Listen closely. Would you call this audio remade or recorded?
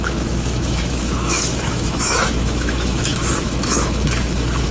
remade